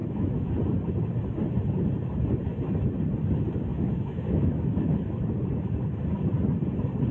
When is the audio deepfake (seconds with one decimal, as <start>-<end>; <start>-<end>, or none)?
0.0-0.5; 3.7-5.3